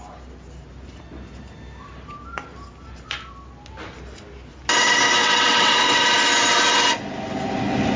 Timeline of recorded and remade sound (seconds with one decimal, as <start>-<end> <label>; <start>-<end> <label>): 0.0-5.2 recorded; 5.2-6.0 remade; 6.0-8.0 recorded